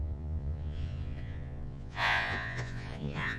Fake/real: fake